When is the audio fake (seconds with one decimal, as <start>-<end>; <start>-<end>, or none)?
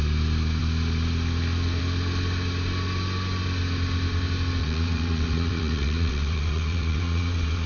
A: 4.6-7.7